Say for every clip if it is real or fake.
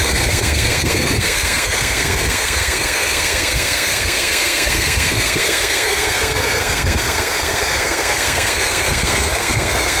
fake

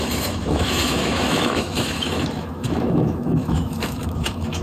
fake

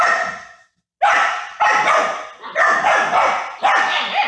real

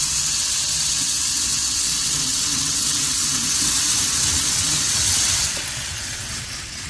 fake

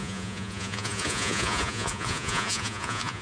fake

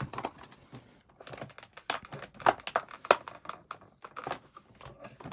real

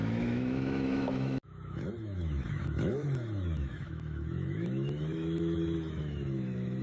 fake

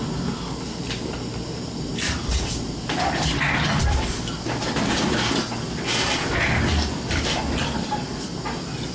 real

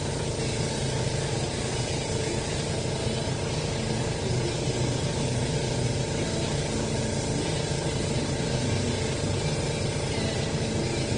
real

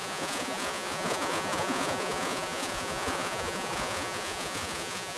fake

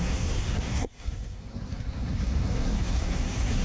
fake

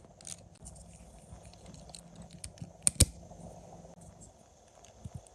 real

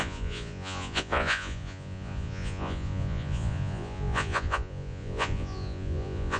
fake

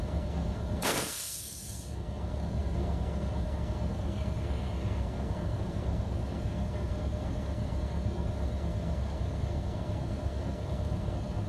fake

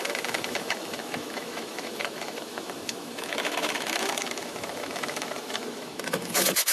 fake